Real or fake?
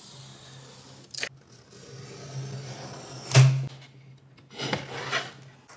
real